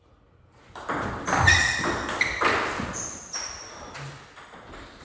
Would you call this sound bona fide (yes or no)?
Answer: yes